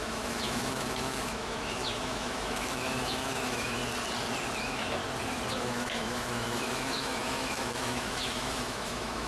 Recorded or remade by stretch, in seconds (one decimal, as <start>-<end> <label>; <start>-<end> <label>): 0.0-3.8 remade; 3.8-4.6 recorded; 4.6-5.0 remade; 5.0-5.5 recorded; 5.5-9.3 remade